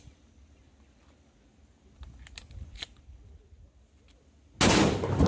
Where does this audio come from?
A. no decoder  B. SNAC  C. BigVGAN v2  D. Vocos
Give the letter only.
A